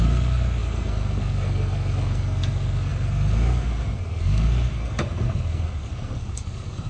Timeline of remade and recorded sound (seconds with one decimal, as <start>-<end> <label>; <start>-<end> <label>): 0.0-6.9 remade